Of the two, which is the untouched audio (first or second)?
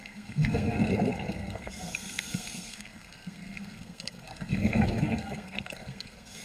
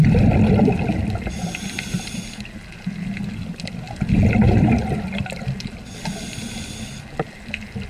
second